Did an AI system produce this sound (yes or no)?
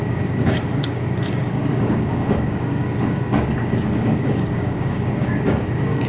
yes